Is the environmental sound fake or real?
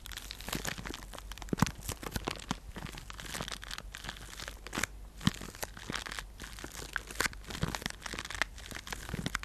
real